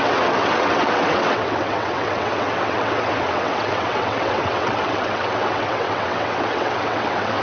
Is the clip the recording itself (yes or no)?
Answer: no